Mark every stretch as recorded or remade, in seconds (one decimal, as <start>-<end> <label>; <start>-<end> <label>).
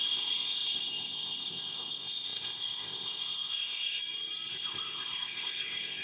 0.0-4.0 remade; 4.0-4.5 recorded; 4.5-6.0 remade